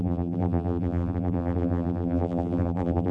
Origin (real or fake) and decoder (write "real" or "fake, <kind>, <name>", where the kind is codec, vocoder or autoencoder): fake, vocoder, BigVGAN v2